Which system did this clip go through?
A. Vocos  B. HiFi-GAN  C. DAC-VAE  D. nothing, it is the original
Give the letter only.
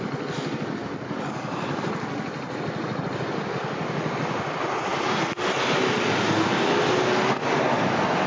D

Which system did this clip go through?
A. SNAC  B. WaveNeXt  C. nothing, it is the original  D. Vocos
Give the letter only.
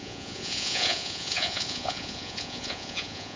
D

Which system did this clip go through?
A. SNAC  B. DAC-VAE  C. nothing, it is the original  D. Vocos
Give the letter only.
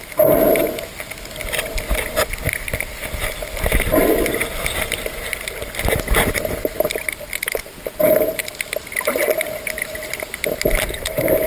C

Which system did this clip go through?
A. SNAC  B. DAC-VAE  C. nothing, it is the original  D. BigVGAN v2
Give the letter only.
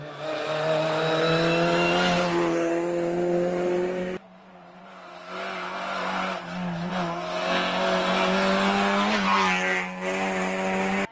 C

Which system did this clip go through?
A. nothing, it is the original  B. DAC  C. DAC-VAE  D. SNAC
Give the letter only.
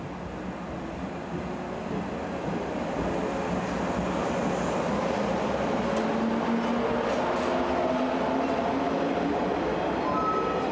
A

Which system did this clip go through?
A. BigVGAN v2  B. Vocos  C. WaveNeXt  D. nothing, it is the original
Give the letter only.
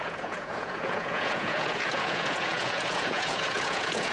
B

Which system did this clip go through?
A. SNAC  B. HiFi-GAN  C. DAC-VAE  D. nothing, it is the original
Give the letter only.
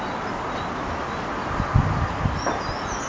D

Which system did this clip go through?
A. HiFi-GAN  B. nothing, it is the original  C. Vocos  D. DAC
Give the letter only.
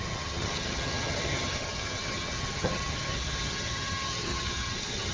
A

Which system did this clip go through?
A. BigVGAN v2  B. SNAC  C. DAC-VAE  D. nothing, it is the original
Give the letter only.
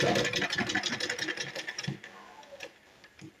A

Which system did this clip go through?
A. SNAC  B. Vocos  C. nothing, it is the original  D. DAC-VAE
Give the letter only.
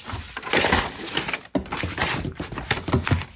C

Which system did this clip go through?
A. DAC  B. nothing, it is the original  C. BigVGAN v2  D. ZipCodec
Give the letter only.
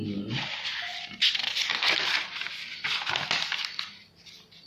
B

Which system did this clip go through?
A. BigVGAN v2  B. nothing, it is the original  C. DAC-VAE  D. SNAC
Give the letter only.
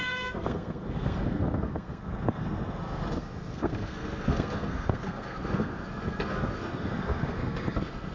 D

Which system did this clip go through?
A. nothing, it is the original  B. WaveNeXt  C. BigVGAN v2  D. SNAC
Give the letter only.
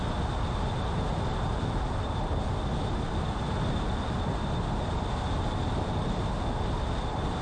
A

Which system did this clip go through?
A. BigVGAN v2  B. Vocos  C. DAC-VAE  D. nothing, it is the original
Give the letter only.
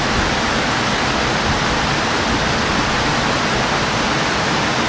D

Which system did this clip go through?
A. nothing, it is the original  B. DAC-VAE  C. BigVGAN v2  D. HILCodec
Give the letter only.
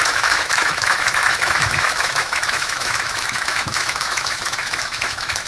B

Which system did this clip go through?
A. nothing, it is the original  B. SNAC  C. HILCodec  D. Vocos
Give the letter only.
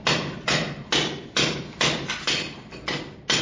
A